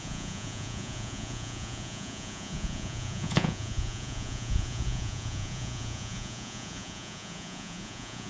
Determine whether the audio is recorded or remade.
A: remade